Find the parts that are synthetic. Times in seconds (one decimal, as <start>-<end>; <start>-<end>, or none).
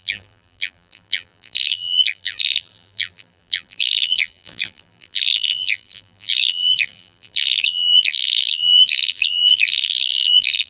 0.0-10.7